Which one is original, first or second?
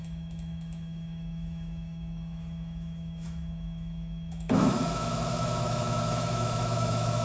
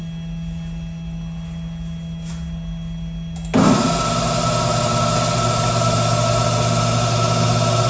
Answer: second